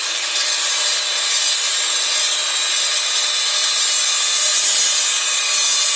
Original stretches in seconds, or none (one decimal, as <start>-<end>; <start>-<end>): 0.0-6.0